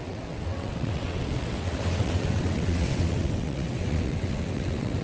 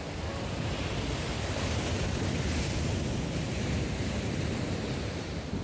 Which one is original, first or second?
second